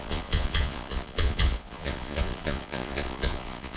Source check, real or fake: fake